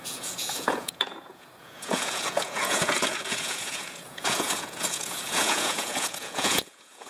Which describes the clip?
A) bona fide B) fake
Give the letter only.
B